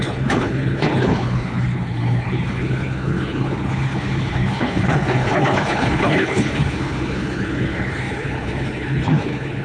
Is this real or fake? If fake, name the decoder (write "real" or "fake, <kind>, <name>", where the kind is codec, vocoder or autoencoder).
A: fake, codec, HILCodec